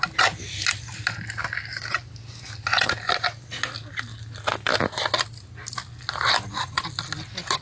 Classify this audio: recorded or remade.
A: recorded